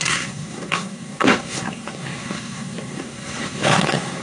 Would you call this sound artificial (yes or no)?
yes